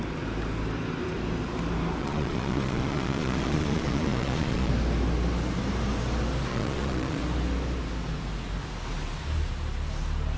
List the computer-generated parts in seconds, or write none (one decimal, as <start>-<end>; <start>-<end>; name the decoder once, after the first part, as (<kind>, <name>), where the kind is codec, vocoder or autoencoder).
2.0-4.7 (vocoder, Vocos); 6.5-7.2